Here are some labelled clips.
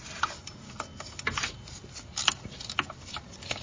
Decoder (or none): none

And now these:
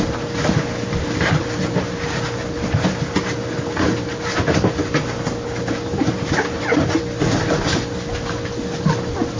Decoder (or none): none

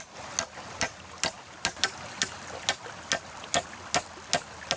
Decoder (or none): none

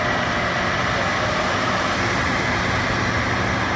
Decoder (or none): none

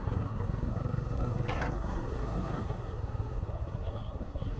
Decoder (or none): codec, SNAC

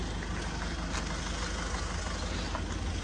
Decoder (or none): none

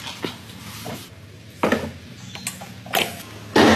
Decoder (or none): none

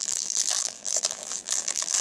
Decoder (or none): vocoder, BigVGAN v2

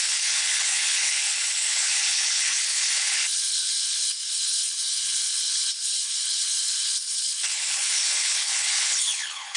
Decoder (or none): codec, HILCodec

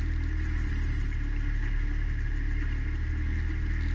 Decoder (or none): none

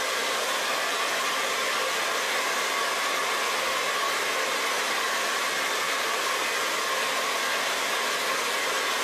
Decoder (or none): none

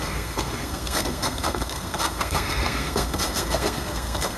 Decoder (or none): codec, SNAC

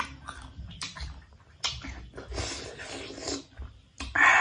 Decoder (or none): none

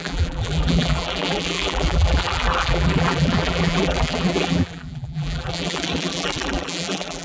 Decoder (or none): vocoder, BigVGAN v2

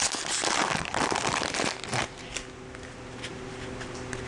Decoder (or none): none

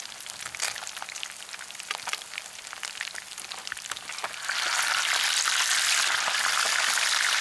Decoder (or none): none